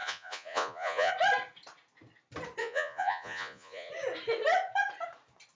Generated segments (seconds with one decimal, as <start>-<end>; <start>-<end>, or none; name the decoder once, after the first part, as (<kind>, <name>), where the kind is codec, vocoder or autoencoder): 0.0-1.1 (vocoder, Vocos); 2.6-3.9